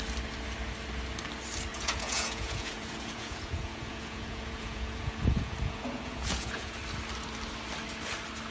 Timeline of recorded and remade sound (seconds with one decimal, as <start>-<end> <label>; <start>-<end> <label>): 0.0-1.7 recorded; 1.7-6.8 remade; 6.8-8.5 recorded

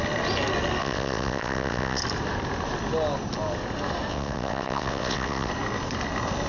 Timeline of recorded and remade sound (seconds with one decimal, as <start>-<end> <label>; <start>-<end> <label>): 0.0-0.8 recorded; 0.8-2.0 remade; 2.0-4.1 recorded; 4.1-5.5 remade; 5.5-6.5 recorded

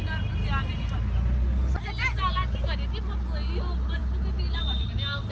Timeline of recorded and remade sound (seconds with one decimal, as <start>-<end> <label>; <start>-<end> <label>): 0.0-5.3 recorded

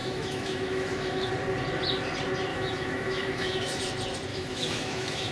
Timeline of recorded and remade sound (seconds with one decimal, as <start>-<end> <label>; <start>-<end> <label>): 0.0-1.3 remade; 1.3-2.5 recorded; 2.5-3.8 remade; 3.8-4.3 recorded; 4.3-5.3 remade